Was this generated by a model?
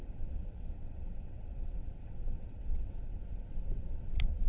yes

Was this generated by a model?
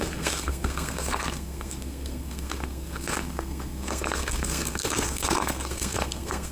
yes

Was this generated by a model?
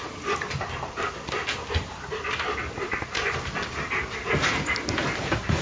no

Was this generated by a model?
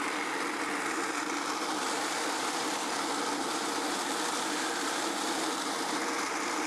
no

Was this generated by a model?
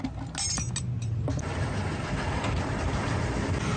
no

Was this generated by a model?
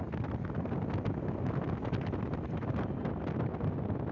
no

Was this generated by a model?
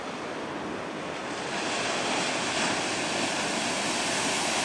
no